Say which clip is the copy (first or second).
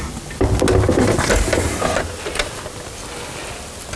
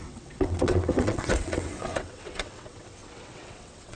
second